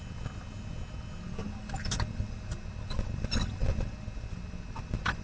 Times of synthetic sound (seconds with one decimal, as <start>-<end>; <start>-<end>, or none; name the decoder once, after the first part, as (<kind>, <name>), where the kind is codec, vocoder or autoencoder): none